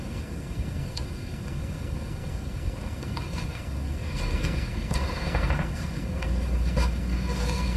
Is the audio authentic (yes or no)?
no